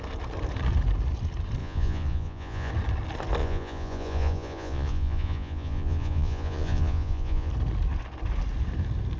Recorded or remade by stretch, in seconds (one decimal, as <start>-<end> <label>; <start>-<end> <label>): 0.0-1.6 recorded; 1.6-2.7 remade; 2.7-3.4 recorded; 3.4-7.5 remade; 7.5-9.2 recorded